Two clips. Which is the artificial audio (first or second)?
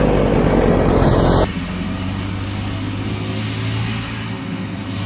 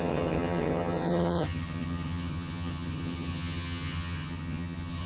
second